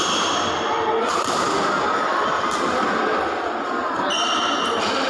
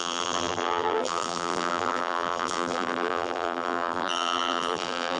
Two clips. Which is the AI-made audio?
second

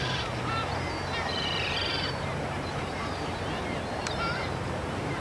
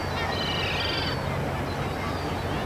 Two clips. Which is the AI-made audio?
first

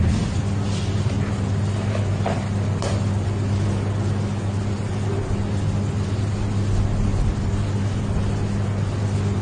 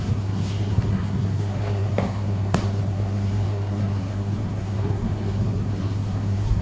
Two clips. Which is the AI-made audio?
second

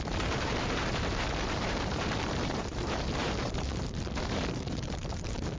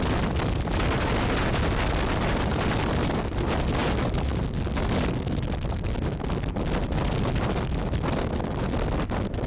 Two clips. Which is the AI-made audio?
first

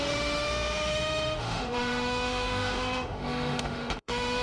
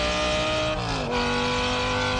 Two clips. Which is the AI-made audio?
first